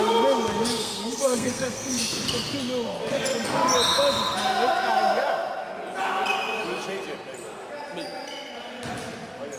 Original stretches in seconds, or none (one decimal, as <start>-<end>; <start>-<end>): 0.0-0.8; 1.9-9.6